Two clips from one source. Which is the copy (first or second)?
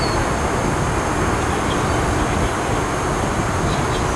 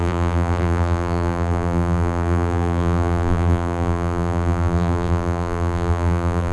second